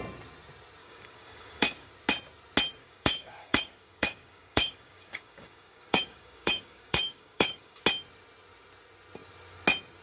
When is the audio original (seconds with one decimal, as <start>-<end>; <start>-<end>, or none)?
0.0-0.8; 1.9-2.8; 7.8-10.0

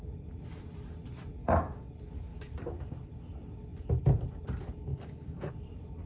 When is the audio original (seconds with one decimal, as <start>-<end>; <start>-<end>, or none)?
0.0-1.4; 1.9-4.9; 5.5-6.1

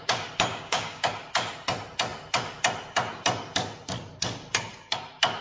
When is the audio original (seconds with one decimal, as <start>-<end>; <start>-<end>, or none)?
0.0-0.5; 1.1-5.4

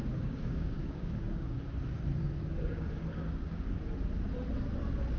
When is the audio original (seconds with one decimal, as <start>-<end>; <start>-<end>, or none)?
1.6-2.2; 3.8-5.2